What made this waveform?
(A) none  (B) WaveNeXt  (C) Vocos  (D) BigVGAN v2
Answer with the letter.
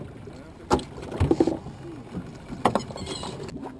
A